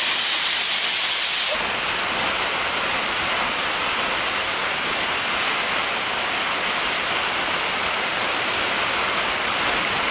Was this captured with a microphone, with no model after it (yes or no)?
yes